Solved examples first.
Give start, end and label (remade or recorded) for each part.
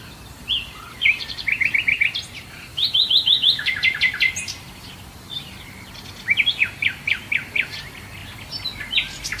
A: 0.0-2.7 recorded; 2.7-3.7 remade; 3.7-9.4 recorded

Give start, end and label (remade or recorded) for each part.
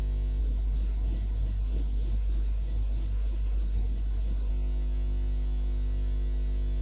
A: 0.0-0.4 recorded; 0.4-4.5 remade; 4.5-6.8 recorded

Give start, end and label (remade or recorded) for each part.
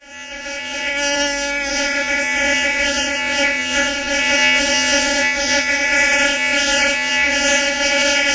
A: 0.0-0.9 remade; 0.9-1.7 recorded; 1.7-8.3 remade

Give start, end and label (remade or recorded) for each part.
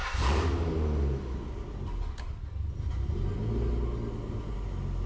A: 0.0-5.1 recorded